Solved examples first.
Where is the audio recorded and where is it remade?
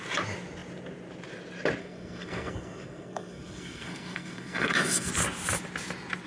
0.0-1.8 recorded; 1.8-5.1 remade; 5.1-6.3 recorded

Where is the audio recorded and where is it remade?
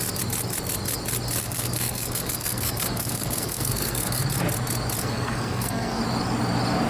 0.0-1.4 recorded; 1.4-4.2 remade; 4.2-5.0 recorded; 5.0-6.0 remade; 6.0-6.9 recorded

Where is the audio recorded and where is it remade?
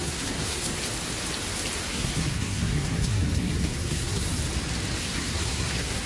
0.0-0.7 remade; 0.7-1.9 recorded; 1.9-4.3 remade; 4.3-5.0 recorded; 5.0-6.1 remade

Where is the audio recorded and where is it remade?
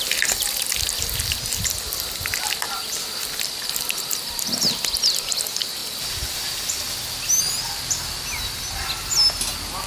0.0-9.9 recorded